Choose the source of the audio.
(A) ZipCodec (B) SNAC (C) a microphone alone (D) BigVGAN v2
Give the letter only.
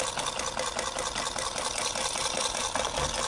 C